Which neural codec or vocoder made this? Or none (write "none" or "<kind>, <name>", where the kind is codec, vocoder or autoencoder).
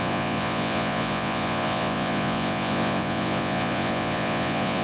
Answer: vocoder, Vocos